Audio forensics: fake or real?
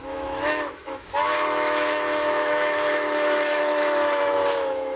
fake